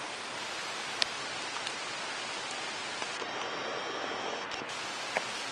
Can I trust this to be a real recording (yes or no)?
yes